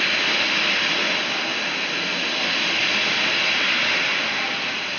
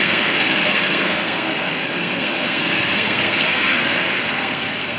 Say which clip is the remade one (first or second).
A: second